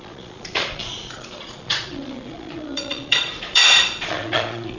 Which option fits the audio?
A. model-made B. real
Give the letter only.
A